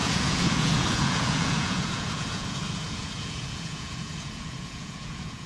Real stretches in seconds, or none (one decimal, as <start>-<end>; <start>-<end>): none